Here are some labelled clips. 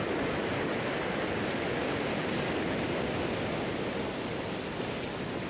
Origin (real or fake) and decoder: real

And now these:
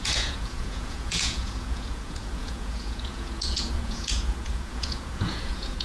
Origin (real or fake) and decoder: fake, vocoder, Vocos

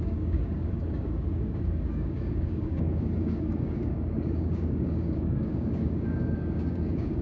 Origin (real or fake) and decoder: fake, codec, DAC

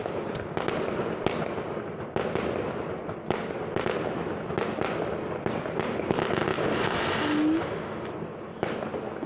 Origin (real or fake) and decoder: real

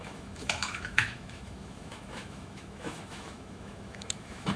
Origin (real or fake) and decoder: fake, autoencoder, DAC-VAE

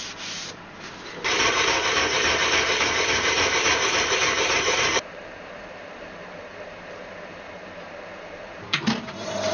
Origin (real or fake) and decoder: fake, vocoder, BigVGAN v2